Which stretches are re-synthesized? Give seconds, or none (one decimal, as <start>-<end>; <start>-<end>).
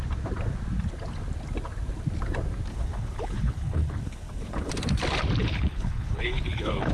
2.7-4.7; 5.4-6.9